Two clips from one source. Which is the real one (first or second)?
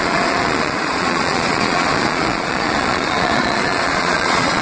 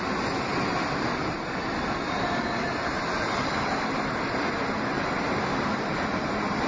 second